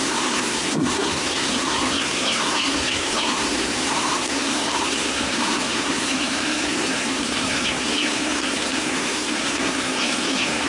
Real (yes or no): no